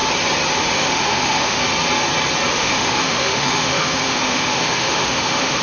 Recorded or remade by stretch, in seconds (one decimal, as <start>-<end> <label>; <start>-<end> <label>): 0.0-0.6 recorded; 0.6-1.6 remade; 1.6-2.5 recorded; 2.5-5.6 remade